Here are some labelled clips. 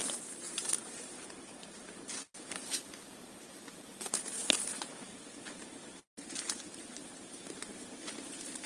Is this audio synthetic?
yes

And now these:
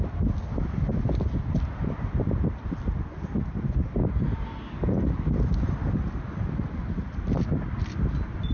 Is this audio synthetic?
no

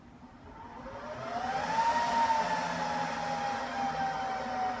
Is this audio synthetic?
no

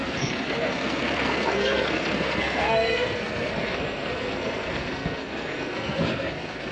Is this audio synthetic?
yes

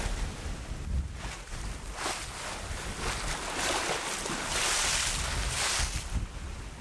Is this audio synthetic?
no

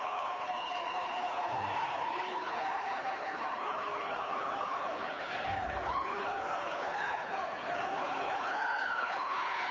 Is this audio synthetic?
yes